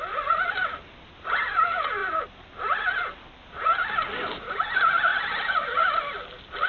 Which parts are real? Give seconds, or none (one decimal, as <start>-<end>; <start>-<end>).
0.0-6.7